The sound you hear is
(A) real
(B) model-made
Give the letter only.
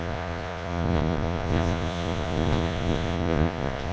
B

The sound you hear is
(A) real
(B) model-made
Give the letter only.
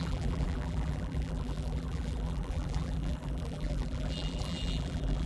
B